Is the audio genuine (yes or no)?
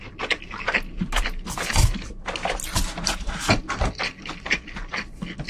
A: yes